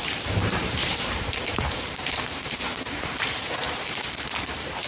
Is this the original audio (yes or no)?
no